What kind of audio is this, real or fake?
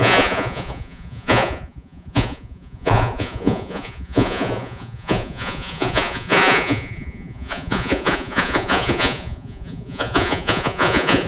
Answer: fake